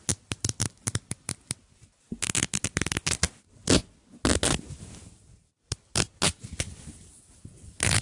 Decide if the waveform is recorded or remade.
recorded